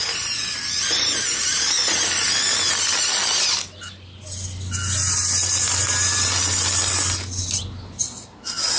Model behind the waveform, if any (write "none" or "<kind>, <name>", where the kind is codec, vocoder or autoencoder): none